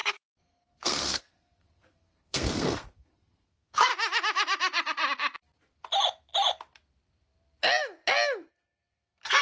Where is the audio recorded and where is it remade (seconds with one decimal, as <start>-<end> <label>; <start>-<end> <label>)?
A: 0.0-3.9 remade; 3.9-8.5 recorded; 8.5-9.4 remade